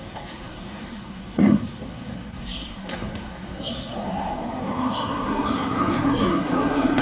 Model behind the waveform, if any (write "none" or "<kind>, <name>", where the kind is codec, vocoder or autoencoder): codec, SNAC